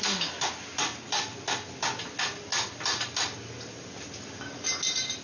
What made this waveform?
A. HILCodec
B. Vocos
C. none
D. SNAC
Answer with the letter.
C